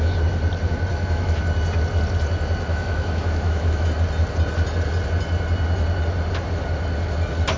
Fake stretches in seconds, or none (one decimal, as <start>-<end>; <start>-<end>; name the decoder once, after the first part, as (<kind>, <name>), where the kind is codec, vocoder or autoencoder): 0.9-1.4 (autoencoder, DAC-VAE); 2.7-3.9